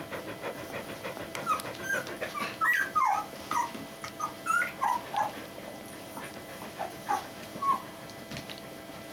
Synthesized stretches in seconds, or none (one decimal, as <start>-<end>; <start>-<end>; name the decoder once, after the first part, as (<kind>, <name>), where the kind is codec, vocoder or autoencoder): 5.2-8.2 (vocoder, BigVGAN v2)